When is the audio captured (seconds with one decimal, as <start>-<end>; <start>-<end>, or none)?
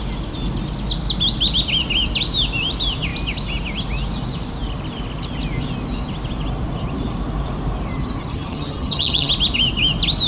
0.0-8.3; 9.3-10.3